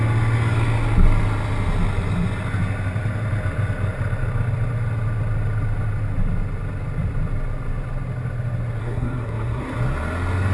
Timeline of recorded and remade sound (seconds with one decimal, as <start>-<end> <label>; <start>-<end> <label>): 0.0-8.8 recorded; 8.8-9.8 remade; 9.8-10.5 recorded